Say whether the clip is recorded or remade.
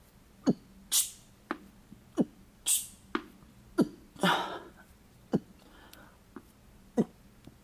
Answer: recorded